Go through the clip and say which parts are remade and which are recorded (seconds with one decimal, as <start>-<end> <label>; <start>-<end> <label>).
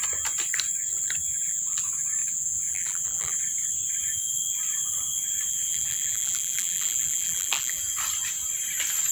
0.0-1.3 recorded; 1.3-1.8 remade; 1.8-2.2 recorded; 2.2-3.4 remade; 3.4-5.5 recorded; 5.5-7.8 remade; 7.8-9.1 recorded